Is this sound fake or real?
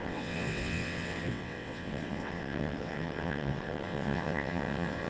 fake